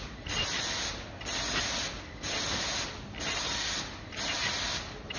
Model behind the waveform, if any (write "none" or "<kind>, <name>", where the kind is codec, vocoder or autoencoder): none